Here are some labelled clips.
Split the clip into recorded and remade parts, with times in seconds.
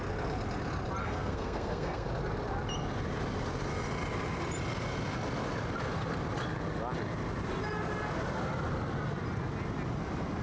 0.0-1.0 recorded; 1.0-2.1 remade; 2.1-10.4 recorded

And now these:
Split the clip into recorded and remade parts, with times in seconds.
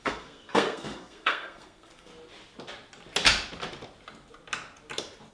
0.0-2.1 remade; 2.1-5.3 recorded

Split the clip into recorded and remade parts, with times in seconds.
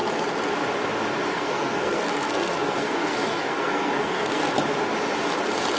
0.0-1.3 recorded; 1.3-4.4 remade; 4.4-5.8 recorded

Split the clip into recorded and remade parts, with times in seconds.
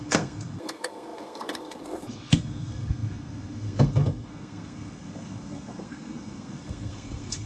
0.0-7.5 remade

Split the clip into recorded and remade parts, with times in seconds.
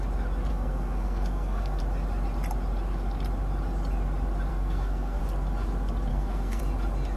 0.0-0.5 recorded; 0.5-1.8 remade; 1.8-4.5 recorded; 4.5-5.2 remade; 5.2-6.1 recorded; 6.1-6.6 remade; 6.6-7.2 recorded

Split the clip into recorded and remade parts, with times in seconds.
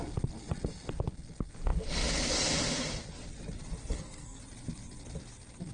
0.0-3.8 recorded; 3.8-4.4 remade; 4.4-5.7 recorded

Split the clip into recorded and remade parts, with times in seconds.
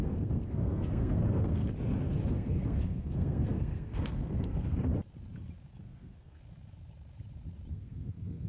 0.0-1.6 remade; 1.6-2.3 recorded; 2.3-4.9 remade; 4.9-5.7 recorded; 5.7-6.4 remade; 6.4-7.7 recorded; 7.7-8.5 remade